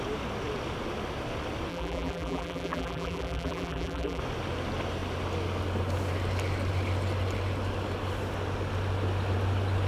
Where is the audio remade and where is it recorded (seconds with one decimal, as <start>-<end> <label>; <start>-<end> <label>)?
0.0-1.7 recorded; 1.7-4.2 remade; 4.2-9.9 recorded